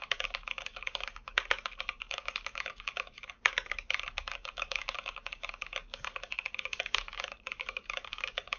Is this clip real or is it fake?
fake